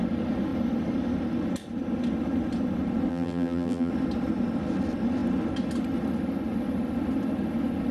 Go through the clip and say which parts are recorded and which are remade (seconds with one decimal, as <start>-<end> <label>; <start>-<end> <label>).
0.0-3.1 recorded; 3.1-3.9 remade; 3.9-7.9 recorded